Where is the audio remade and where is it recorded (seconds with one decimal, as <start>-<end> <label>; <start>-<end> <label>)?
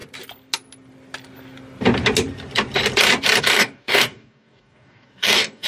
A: 0.0-3.4 recorded; 3.4-5.7 remade